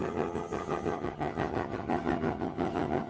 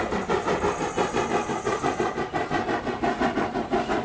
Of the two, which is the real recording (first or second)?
second